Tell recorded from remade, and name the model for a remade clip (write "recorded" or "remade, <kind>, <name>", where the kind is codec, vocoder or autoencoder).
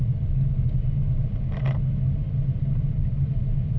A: recorded